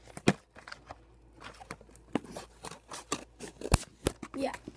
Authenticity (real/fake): real